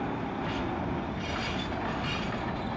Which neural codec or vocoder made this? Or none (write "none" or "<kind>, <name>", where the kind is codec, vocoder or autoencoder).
none